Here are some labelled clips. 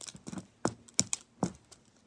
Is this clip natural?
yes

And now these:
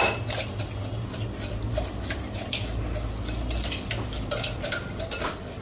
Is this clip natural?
yes